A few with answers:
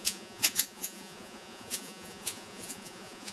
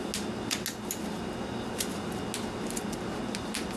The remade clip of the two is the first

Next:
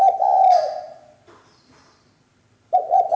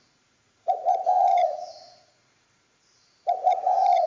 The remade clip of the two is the second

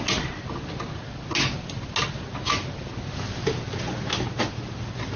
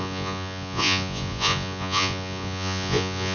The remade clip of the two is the second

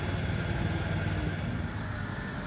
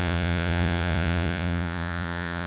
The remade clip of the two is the second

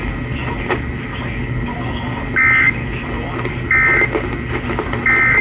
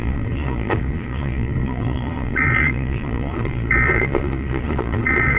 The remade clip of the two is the second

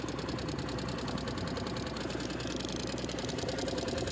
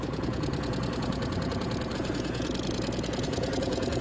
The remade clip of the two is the second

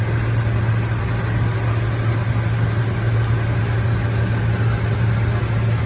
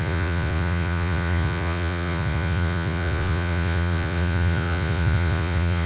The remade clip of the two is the second